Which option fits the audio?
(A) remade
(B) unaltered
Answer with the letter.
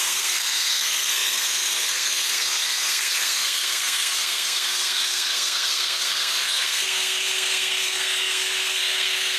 A